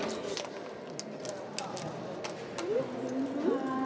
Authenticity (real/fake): real